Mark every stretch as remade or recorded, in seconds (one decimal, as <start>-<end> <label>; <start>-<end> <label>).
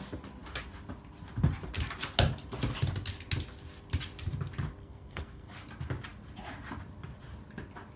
0.0-4.8 recorded; 4.8-5.5 remade; 5.5-8.0 recorded